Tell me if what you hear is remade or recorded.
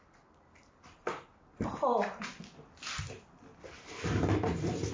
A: recorded